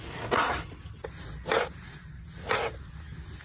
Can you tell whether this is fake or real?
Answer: real